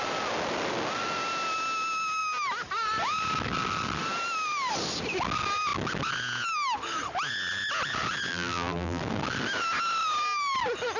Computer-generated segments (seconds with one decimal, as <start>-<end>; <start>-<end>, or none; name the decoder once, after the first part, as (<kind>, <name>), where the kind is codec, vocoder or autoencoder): 8.3-9.0 (vocoder, BigVGAN v2)

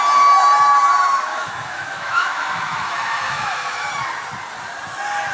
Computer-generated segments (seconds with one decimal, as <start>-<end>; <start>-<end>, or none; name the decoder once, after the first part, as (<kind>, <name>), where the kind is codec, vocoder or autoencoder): 1.3-3.9 (autoencoder, DAC-VAE)

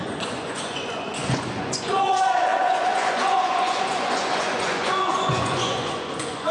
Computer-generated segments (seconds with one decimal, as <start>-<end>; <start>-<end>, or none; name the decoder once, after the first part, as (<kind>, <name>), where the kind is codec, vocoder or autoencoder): 0.0-6.5 (vocoder, Vocos)

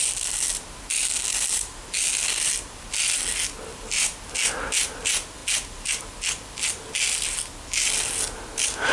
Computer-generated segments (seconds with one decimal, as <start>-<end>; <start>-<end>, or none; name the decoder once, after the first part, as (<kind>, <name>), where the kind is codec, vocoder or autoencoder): 3.7-4.2 (vocoder, BigVGAN v2)

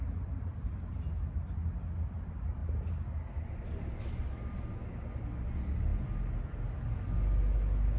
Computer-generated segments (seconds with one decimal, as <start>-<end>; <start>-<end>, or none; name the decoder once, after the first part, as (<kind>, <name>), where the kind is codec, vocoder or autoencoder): 5.9-7.2 (vocoder, BigVGAN v2)

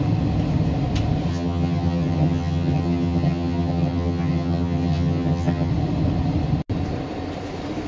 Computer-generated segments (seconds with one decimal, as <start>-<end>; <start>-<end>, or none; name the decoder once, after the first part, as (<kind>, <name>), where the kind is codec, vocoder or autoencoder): 1.3-5.7 (vocoder, HiFi-GAN)

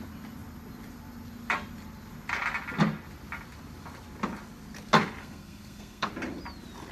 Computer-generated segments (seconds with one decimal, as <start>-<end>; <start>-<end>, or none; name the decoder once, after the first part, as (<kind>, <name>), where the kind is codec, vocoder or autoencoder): 5.2-6.1 (codec, SNAC)